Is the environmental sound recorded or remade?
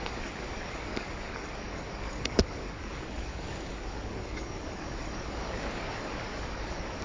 remade